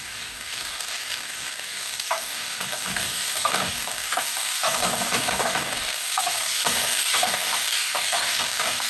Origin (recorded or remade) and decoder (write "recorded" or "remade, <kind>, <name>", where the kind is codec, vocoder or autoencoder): remade, codec, DAC